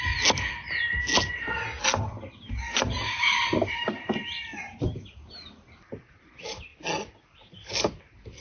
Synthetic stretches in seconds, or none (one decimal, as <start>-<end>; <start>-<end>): none